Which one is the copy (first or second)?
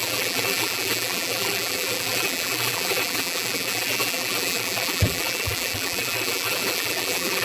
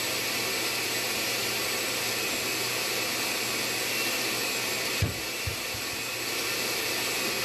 first